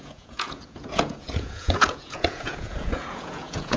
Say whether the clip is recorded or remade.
remade